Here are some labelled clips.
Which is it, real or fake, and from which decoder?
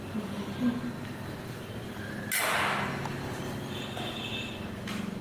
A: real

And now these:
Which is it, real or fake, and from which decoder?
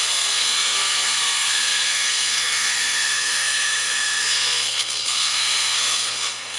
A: fake, codec, SNAC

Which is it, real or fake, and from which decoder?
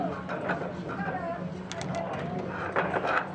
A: real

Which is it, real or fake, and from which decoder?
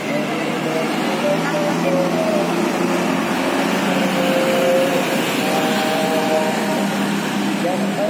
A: real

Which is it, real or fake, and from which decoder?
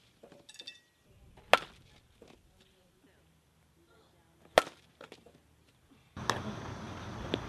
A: real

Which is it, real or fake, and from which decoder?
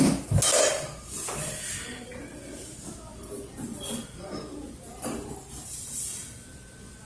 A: fake, vocoder, BigVGAN v2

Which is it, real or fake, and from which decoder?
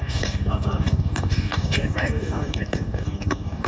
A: fake, codec, DAC